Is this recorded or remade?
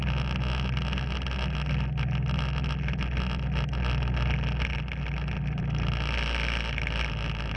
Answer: recorded